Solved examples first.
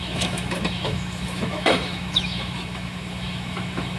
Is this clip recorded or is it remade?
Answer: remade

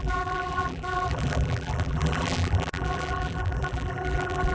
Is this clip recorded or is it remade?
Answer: remade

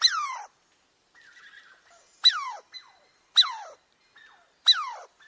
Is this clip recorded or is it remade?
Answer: recorded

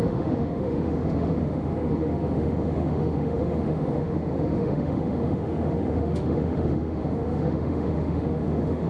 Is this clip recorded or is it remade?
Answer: remade